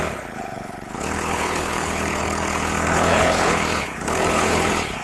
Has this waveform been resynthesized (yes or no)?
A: yes